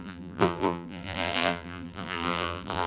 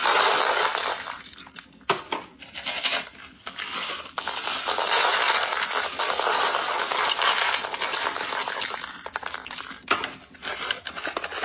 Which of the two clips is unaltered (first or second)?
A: second